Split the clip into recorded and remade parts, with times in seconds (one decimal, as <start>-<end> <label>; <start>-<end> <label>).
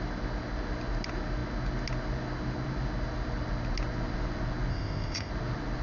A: 0.0-4.7 recorded; 4.7-5.3 remade; 5.3-5.8 recorded